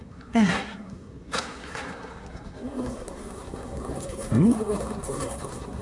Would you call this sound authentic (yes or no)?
no